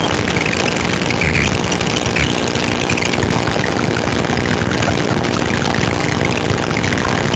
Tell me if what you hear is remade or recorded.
recorded